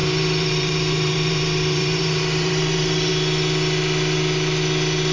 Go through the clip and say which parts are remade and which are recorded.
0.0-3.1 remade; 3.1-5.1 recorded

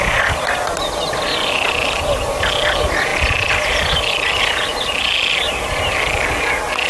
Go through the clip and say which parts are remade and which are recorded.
0.0-6.9 recorded

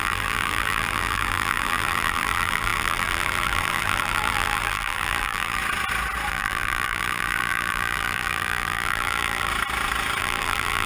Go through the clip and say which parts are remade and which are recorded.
0.0-5.6 remade; 5.6-6.3 recorded; 6.3-9.5 remade; 9.5-10.2 recorded; 10.2-10.9 remade